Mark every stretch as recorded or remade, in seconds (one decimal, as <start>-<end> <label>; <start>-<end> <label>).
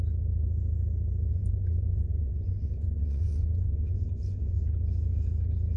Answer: 0.0-1.3 recorded; 1.3-4.6 remade; 4.6-5.8 recorded